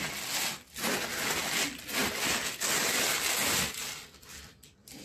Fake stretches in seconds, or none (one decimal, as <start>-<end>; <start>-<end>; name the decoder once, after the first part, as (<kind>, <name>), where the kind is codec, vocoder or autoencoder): none